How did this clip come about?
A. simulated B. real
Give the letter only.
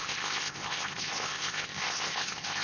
A